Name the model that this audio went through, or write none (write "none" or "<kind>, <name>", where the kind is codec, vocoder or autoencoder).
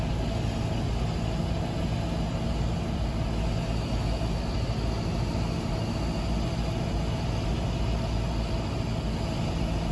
none